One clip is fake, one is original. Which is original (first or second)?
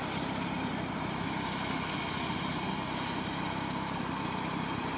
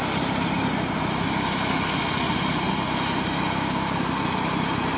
second